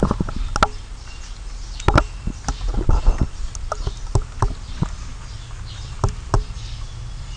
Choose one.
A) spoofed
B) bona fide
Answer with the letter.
B